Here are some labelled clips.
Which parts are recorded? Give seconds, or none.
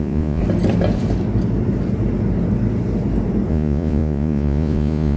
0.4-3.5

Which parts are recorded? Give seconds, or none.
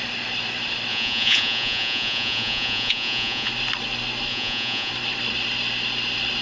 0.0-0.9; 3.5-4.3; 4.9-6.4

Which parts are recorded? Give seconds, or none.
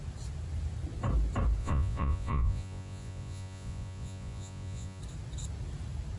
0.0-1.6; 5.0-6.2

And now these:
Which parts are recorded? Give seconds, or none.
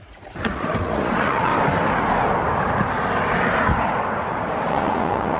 1.5-4.7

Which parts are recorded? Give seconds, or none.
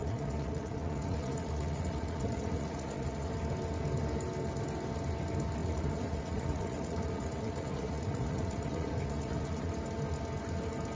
3.3-5.6; 9.7-10.9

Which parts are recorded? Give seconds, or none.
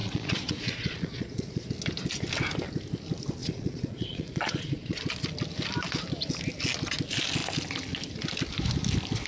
1.7-3.4; 5.0-9.3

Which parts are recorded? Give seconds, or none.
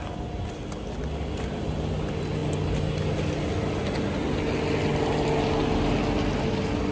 0.0-6.9